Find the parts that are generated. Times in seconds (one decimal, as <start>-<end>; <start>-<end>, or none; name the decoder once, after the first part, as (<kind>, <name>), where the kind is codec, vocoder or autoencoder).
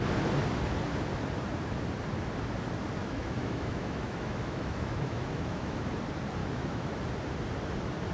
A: 3.0-5.9 (autoencoder, DAC-VAE); 6.4-7.1